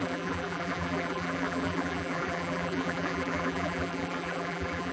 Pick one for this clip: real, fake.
fake